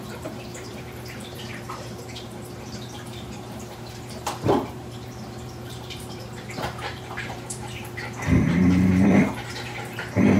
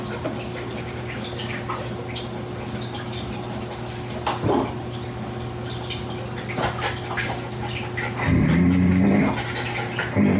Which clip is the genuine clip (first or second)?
second